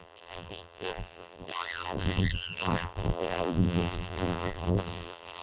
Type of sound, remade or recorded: remade